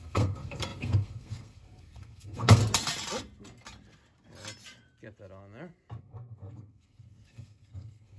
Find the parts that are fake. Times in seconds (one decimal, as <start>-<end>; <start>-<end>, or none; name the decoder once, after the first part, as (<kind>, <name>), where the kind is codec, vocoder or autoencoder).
0.0-2.6 (codec, SNAC); 6.0-8.2